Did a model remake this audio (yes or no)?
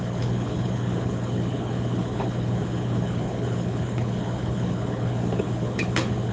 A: yes